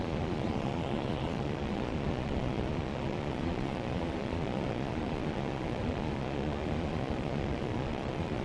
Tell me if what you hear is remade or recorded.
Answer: remade